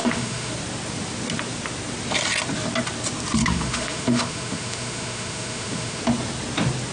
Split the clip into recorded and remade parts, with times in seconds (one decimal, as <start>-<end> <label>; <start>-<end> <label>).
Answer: 0.0-0.5 remade; 0.5-3.4 recorded; 3.4-6.0 remade; 6.0-6.9 recorded